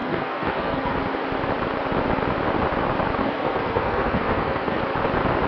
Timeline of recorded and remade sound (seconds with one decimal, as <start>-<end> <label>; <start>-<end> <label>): 0.0-1.0 remade; 1.0-3.2 recorded; 3.2-4.8 remade; 4.8-5.5 recorded